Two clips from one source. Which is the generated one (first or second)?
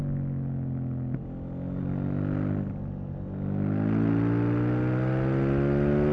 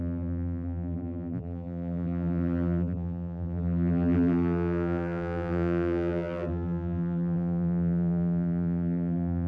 second